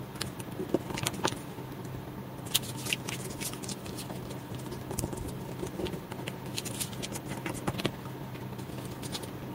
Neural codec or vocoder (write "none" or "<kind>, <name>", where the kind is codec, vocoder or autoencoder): none